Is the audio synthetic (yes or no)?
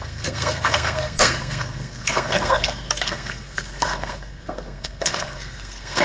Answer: yes